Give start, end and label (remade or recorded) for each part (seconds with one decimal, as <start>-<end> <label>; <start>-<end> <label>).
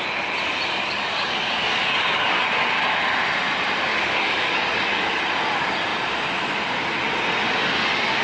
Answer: 0.0-0.8 recorded; 0.8-2.4 remade; 2.4-3.9 recorded; 3.9-5.2 remade; 5.2-8.2 recorded